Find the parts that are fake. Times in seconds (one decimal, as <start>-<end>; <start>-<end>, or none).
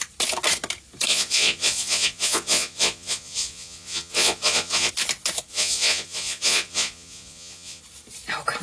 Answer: 1.1-4.9; 5.5-7.8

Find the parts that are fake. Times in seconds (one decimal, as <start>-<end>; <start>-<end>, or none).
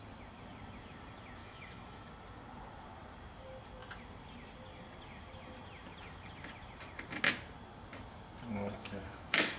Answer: 1.4-2.1; 8.8-9.6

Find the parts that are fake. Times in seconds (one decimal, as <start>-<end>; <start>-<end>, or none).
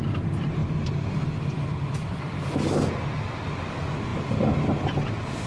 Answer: none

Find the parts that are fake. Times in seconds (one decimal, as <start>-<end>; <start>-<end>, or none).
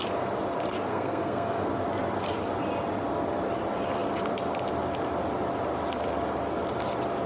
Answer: 0.9-1.7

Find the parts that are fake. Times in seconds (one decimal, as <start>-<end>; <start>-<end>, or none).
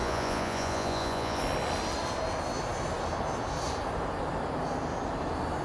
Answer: 0.0-1.4